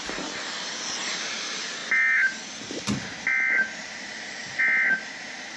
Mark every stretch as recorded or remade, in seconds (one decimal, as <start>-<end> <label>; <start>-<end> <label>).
0.0-5.6 recorded